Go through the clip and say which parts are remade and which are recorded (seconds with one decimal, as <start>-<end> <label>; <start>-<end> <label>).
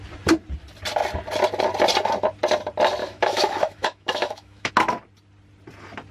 0.0-3.0 recorded; 3.0-4.7 remade; 4.7-6.1 recorded